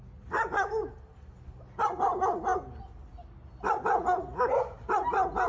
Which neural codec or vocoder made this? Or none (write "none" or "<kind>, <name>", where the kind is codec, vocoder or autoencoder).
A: none